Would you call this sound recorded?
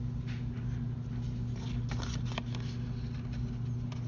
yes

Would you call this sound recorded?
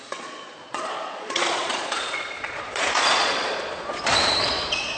no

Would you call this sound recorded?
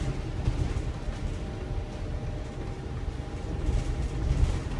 yes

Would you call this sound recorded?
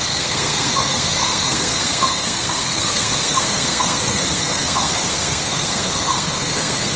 no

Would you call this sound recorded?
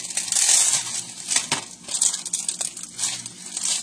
yes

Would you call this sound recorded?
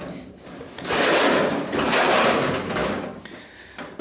yes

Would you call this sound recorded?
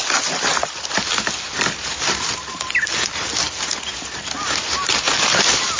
yes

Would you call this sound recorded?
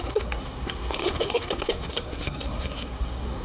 no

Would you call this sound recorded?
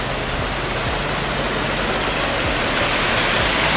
yes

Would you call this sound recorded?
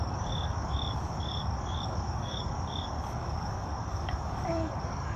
no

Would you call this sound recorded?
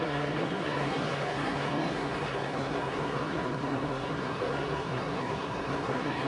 no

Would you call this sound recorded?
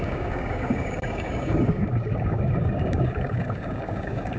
no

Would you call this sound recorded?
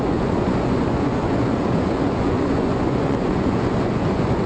no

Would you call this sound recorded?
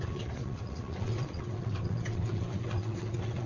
no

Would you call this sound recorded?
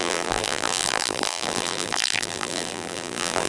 no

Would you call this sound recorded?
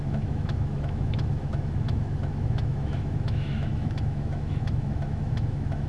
no